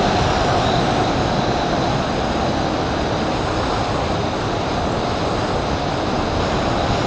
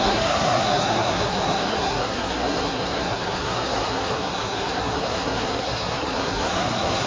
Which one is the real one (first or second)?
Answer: first